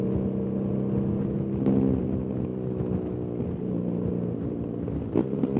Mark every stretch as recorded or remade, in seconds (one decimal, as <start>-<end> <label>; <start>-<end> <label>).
0.0-5.6 recorded